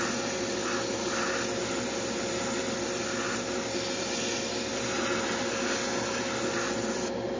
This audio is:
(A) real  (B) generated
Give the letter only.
A